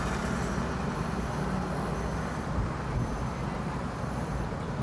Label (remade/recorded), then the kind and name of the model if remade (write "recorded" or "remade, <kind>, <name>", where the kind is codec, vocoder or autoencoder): remade, vocoder, BigVGAN v2